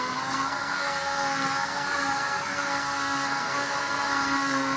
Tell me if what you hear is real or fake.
fake